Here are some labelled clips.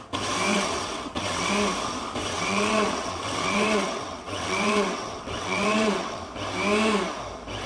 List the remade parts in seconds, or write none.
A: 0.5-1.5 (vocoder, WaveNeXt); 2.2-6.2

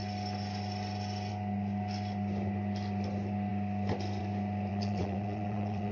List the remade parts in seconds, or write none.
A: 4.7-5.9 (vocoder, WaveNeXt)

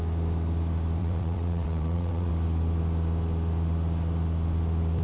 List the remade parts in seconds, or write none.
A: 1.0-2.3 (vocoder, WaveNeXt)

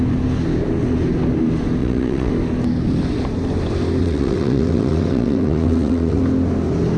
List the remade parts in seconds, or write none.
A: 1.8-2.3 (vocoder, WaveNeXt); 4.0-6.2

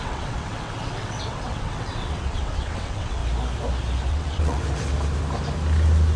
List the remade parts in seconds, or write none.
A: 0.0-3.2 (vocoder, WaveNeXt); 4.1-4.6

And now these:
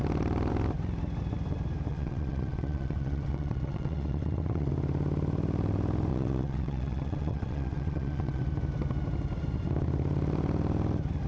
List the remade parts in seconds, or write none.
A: 1.9-4.7 (vocoder, WaveNeXt); 6.1-8.4